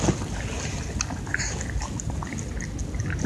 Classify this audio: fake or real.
real